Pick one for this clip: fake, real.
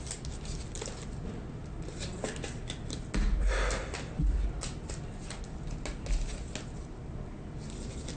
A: real